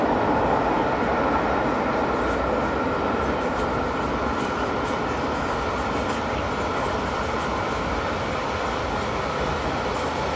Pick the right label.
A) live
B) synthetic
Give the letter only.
A